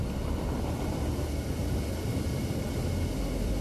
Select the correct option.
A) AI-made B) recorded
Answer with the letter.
B